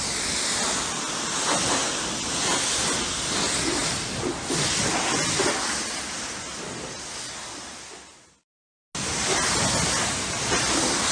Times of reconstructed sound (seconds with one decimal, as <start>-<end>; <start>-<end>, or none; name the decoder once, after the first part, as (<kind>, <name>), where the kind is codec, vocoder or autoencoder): none